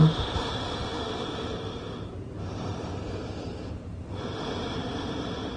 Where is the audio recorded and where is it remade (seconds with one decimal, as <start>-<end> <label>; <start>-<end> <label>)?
0.0-2.9 remade; 2.9-3.7 recorded; 3.7-5.6 remade